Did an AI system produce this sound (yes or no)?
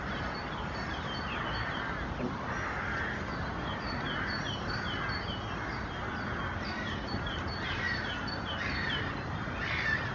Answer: no